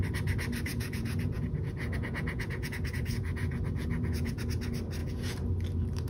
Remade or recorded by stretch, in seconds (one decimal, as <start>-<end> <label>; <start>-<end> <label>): 0.0-0.7 recorded; 0.7-4.4 remade; 4.4-5.0 recorded; 5.0-5.5 remade; 5.5-6.1 recorded